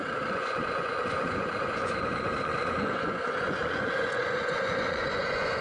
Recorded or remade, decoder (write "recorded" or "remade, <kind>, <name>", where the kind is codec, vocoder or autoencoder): remade, vocoder, Vocos